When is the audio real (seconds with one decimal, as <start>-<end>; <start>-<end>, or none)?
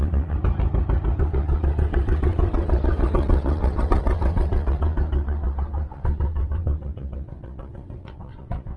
0.4-1.2